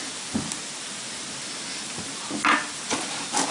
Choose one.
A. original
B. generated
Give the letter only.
A